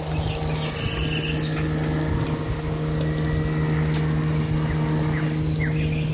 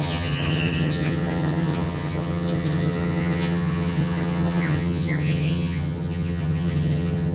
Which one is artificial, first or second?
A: second